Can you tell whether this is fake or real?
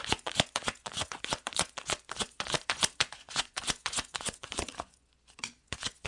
fake